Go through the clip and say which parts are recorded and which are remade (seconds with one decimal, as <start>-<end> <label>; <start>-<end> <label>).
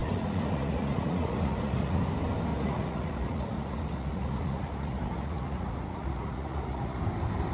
0.0-2.0 remade; 2.0-2.5 recorded; 2.5-7.0 remade; 7.0-7.5 recorded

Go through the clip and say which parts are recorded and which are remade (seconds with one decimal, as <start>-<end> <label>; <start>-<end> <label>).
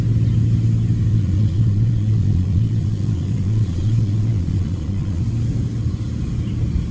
0.0-1.1 recorded; 1.1-5.2 remade; 5.2-6.9 recorded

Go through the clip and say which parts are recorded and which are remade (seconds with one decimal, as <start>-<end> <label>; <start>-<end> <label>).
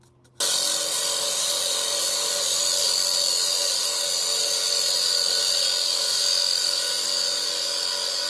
0.0-8.3 recorded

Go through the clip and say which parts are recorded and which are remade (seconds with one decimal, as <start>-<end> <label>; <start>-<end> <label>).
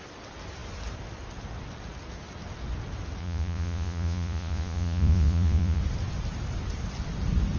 0.0-3.2 recorded; 3.2-5.8 remade; 5.8-7.6 recorded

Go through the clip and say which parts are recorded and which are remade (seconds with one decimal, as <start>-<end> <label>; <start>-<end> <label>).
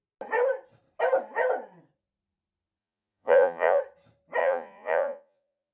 0.0-2.8 recorded; 2.8-3.8 remade; 3.8-4.4 recorded; 4.4-5.7 remade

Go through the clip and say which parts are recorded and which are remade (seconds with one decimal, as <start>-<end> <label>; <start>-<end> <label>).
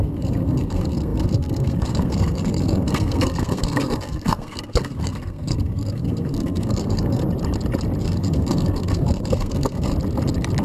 0.0-7.2 remade; 7.2-8.0 recorded; 8.0-9.9 remade; 9.9-10.6 recorded